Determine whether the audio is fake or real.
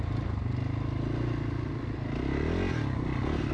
real